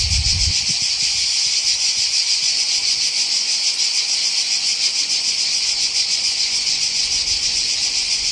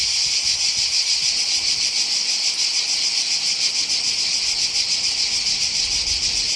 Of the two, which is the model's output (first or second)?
first